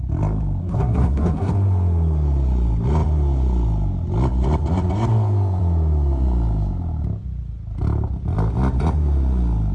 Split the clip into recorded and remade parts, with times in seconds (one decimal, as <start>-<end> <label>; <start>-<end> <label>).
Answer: 0.0-0.6 recorded; 0.6-1.5 remade; 1.5-9.7 recorded